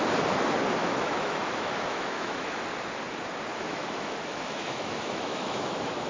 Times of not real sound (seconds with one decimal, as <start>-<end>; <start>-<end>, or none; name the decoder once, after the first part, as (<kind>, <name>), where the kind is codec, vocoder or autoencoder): 0.8-2.6 (autoencoder, DAC-VAE); 3.5-6.1